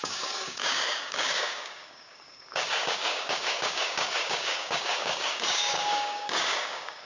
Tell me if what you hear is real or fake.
fake